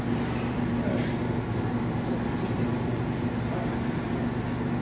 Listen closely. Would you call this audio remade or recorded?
recorded